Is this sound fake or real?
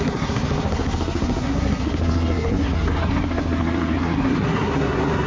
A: fake